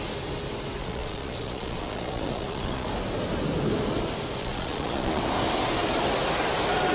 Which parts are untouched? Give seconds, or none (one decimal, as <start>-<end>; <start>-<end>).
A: 0.0-0.8; 2.9-4.4; 5.2-6.9